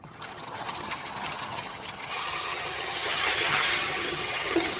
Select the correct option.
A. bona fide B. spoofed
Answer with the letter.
B